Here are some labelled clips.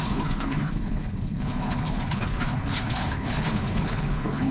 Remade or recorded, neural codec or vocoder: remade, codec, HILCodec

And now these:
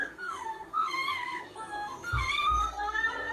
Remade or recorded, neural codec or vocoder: remade, codec, SNAC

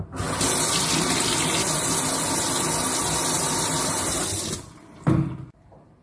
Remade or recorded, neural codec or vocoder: recorded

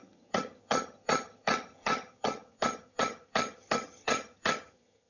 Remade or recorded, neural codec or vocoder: remade, vocoder, HiFi-GAN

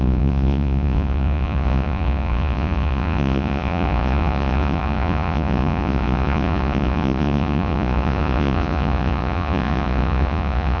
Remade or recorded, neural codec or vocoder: remade, vocoder, Vocos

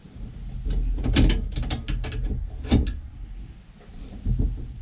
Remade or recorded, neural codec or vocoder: recorded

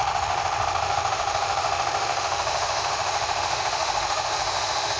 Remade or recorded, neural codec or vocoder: remade, autoencoder, DAC-VAE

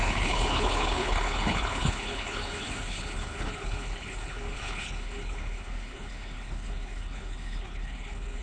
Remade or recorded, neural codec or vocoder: remade, codec, HILCodec